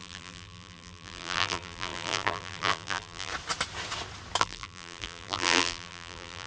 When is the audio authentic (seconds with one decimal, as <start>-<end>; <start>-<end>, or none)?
3.3-4.4

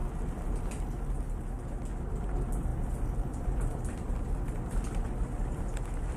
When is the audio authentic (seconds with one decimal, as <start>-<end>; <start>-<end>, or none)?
0.0-2.7; 5.6-6.2

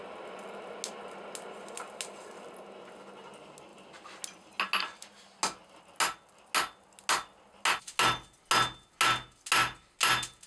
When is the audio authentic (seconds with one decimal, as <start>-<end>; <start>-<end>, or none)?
0.0-10.5